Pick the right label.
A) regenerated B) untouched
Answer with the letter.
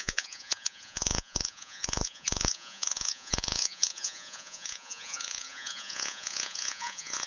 A